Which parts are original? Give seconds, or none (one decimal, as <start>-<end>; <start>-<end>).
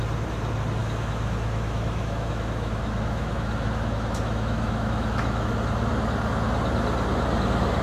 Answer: 0.0-0.8; 5.5-7.8